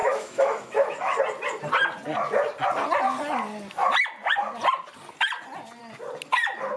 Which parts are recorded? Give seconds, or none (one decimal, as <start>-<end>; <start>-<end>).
1.2-6.8